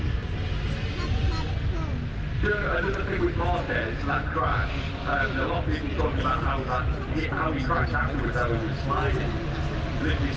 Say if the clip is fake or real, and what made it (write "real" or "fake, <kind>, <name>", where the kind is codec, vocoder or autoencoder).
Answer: real